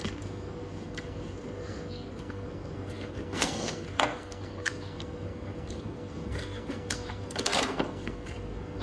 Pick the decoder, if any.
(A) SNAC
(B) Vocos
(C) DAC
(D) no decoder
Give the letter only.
A